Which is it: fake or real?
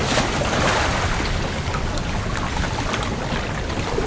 real